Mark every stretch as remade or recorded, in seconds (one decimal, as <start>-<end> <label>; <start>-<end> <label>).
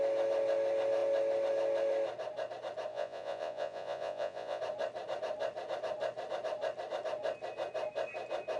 0.0-2.9 recorded; 2.9-4.6 remade; 4.6-8.6 recorded